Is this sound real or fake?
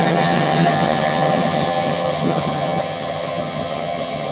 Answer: fake